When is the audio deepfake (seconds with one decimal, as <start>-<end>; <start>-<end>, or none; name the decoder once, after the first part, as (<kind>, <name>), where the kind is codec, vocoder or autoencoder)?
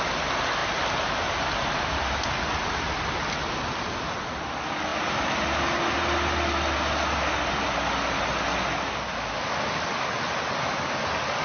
none